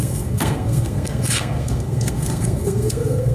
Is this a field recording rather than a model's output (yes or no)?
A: no